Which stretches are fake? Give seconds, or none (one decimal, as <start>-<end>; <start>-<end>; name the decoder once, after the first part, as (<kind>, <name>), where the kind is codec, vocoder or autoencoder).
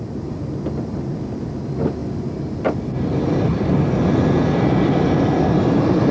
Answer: 2.0-6.1 (vocoder, BigVGAN v2)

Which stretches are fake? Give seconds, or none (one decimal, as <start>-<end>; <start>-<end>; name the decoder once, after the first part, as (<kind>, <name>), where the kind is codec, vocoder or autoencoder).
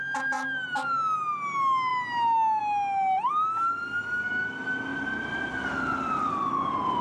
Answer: 4.9-6.5 (vocoder, BigVGAN v2)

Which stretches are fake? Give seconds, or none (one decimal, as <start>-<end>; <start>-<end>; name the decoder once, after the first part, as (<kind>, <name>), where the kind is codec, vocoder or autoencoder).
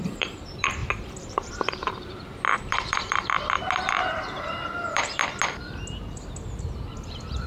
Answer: 0.0-5.2 (vocoder, BigVGAN v2); 6.6-7.5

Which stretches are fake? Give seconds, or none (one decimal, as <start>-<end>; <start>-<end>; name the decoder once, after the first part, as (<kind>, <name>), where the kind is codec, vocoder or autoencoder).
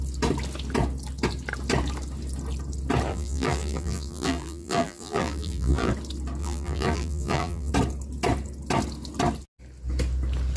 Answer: 3.1-5.9 (vocoder, BigVGAN v2); 6.4-7.7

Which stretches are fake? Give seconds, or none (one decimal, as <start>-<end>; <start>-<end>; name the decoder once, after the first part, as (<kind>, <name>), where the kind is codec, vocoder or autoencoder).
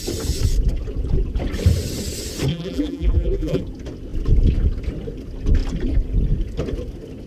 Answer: 2.5-3.6 (vocoder, BigVGAN v2)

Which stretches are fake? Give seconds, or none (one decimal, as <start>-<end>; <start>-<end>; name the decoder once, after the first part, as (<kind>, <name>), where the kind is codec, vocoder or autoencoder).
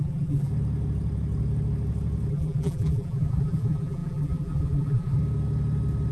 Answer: 0.0-0.5 (vocoder, BigVGAN v2); 2.3-5.2